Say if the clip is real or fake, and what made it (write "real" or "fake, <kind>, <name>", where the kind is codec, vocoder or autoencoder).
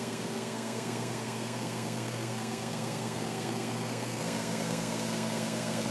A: fake, codec, SNAC